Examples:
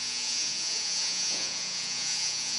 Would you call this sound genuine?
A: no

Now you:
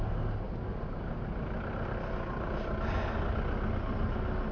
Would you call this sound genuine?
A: yes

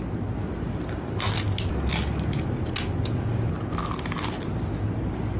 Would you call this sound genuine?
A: yes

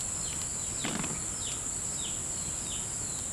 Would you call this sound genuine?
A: yes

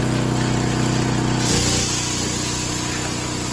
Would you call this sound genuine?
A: yes